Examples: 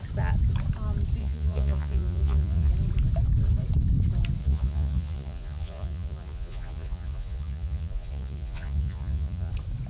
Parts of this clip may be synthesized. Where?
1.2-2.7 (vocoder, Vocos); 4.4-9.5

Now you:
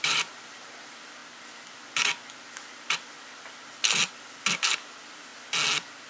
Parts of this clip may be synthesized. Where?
0.0-1.2 (vocoder, BigVGAN v2); 4.1-5.3

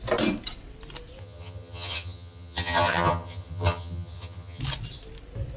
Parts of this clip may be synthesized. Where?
1.2-4.6 (vocoder, HiFi-GAN)